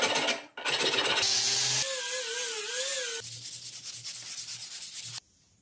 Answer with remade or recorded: recorded